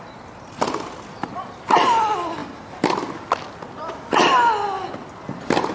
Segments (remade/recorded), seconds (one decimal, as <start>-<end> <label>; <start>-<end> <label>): 0.0-5.7 recorded